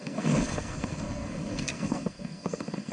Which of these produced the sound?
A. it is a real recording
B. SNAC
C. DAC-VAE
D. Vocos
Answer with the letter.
B